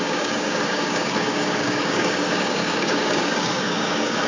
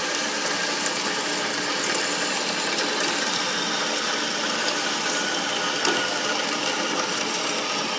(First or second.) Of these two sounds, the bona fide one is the second